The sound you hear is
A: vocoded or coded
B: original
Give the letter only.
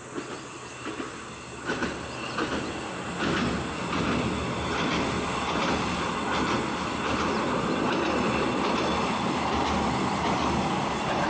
B